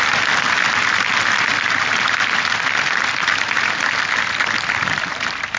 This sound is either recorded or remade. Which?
recorded